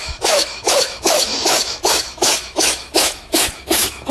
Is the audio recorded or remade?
remade